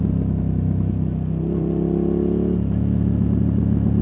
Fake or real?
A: real